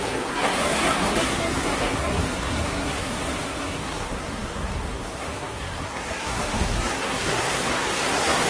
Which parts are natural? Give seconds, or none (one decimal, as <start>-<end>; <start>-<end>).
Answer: none